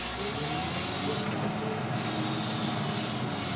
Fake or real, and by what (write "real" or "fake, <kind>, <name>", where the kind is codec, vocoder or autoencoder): real